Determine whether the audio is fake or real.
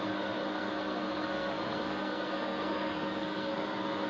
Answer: fake